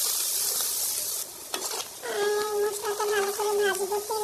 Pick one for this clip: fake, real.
fake